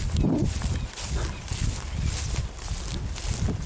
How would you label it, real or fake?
real